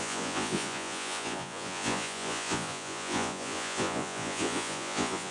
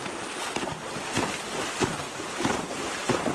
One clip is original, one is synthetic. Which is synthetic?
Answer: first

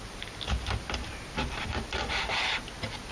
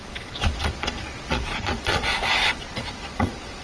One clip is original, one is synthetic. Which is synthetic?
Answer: second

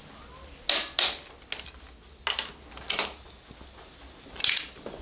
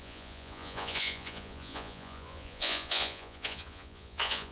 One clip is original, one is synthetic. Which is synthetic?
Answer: second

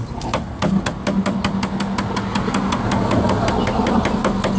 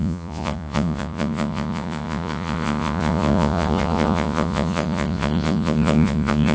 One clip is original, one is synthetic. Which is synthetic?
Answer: second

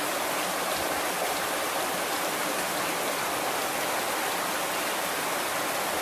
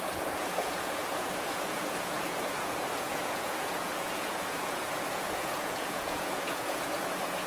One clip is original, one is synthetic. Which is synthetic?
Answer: second